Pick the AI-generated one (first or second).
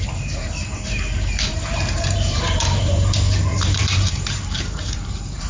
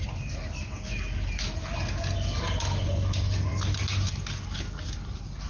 first